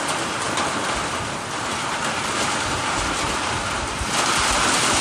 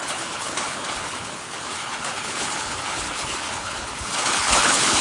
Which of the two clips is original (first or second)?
first